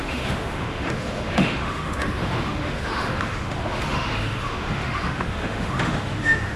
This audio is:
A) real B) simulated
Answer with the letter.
B